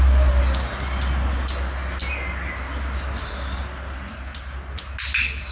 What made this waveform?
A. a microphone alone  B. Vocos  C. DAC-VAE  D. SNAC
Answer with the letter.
A